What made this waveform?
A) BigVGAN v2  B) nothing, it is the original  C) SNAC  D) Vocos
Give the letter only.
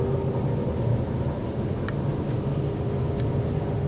B